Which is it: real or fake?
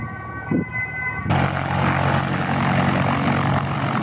real